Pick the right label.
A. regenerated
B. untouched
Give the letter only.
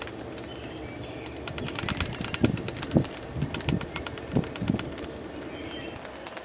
B